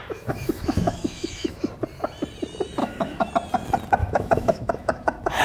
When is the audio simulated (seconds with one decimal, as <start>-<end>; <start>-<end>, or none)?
0.0-1.7; 2.8-3.3; 4.0-5.4